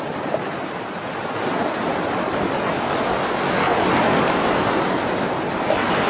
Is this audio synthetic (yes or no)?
no